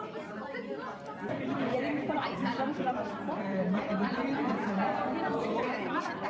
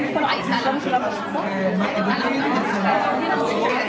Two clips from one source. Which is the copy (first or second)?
first